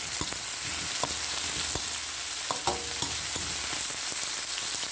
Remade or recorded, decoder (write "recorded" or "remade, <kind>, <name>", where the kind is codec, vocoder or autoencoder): recorded